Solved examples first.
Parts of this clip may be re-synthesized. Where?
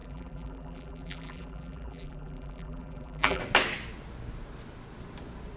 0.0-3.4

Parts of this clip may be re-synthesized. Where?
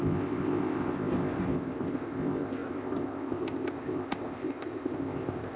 0.0-5.6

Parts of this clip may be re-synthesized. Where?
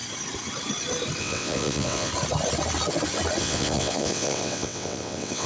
1.2-2.1; 3.4-5.5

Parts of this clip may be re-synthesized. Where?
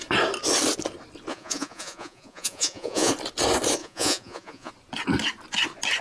1.3-3.1; 3.8-4.7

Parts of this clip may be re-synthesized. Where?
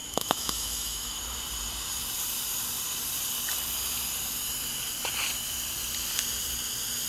0.0-1.2